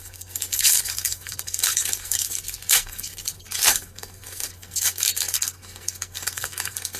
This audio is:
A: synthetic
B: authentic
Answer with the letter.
A